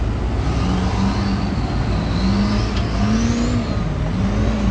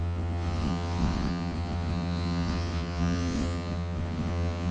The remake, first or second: second